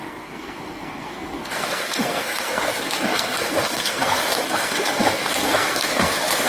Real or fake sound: fake